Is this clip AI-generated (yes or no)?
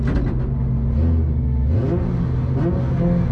no